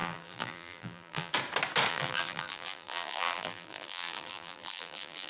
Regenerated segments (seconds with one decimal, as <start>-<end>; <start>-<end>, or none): 0.0-1.3; 1.9-5.3